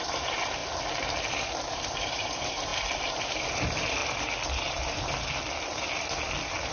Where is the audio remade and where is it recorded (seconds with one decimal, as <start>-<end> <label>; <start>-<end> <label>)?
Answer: 0.0-0.6 remade; 0.6-1.7 recorded; 1.7-4.0 remade; 4.0-6.7 recorded